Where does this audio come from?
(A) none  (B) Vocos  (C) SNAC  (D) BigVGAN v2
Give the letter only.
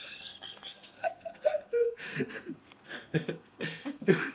C